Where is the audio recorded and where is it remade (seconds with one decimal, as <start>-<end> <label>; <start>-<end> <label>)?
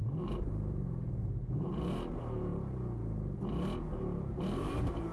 0.0-2.5 remade; 2.5-4.0 recorded; 4.0-5.1 remade